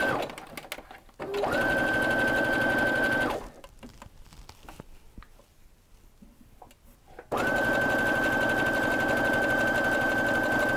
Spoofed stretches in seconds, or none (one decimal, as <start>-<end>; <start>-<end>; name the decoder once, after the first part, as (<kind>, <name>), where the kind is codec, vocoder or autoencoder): none